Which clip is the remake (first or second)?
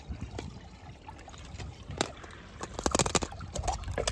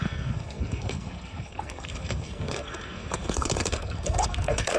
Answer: second